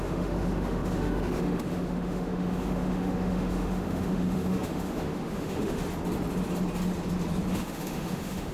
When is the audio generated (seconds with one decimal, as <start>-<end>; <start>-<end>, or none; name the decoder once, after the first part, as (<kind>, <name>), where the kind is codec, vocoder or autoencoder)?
0.0-5.8 (autoencoder, DAC-VAE); 7.5-8.5